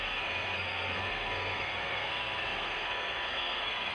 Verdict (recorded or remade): remade